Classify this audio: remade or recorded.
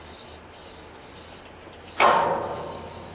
recorded